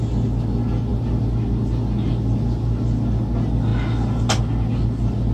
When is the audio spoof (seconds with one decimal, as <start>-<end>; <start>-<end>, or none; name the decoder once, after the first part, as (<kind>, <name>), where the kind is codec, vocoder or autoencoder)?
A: none